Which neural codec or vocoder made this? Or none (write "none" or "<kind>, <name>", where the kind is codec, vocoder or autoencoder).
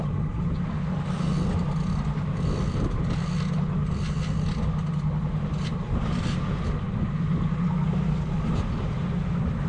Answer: none